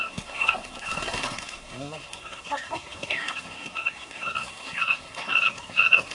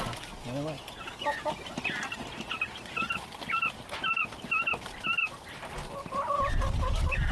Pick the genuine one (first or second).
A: second